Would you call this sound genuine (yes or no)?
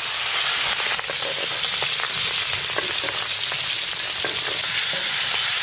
yes